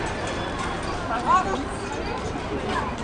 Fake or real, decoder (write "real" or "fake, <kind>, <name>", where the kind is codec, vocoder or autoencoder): fake, vocoder, BigVGAN v2